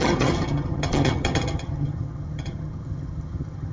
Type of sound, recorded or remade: remade